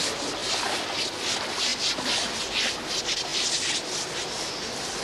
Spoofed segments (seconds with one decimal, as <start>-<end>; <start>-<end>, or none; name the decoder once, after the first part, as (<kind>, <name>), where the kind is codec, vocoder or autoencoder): none